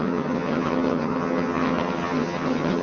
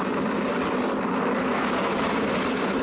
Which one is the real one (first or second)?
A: second